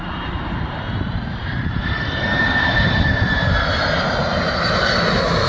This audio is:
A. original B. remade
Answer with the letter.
B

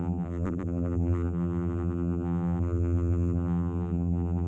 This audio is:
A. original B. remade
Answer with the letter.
B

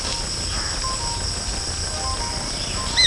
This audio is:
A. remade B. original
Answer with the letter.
B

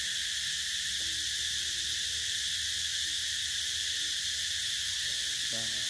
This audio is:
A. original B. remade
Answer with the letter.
B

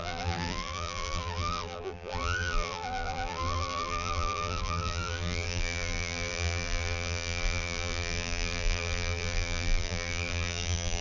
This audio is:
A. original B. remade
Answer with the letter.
B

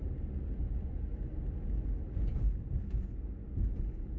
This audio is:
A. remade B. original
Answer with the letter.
B